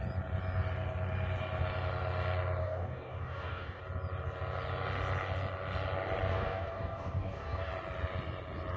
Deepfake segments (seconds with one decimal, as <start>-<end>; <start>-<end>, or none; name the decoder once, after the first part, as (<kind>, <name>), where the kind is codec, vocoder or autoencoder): 2.6-3.8 (codec, DAC); 6.3-7.7